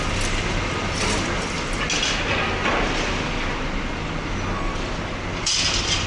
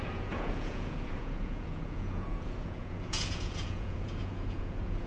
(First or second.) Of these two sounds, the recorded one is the first